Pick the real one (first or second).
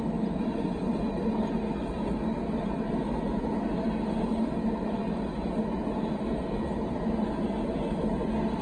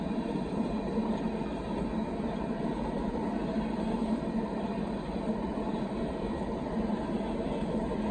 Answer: first